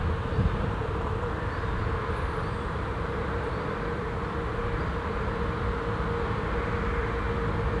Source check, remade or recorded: recorded